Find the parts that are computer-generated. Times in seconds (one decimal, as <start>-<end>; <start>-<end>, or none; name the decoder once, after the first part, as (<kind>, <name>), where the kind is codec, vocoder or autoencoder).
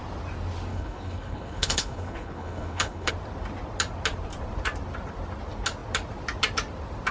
0.7-3.1 (codec, HILCodec)